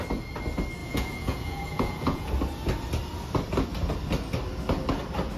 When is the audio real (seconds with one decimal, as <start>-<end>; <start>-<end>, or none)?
0.0-0.8; 2.3-5.4